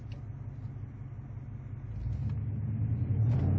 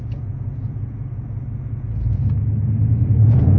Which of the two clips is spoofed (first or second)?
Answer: second